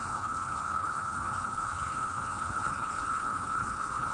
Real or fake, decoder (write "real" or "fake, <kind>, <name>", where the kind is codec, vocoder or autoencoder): fake, codec, HILCodec